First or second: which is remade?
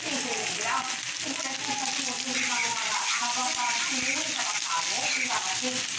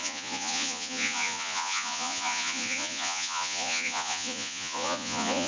second